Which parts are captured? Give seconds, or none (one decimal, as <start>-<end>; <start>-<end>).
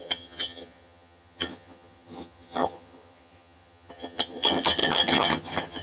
none